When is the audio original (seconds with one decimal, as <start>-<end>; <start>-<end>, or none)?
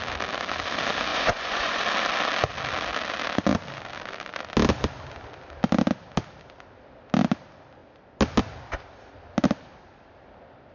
0.0-1.1; 1.8-10.7